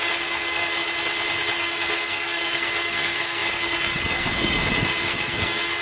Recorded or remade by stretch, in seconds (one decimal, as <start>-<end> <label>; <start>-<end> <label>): 0.0-0.8 remade; 0.8-1.6 recorded; 1.6-5.8 remade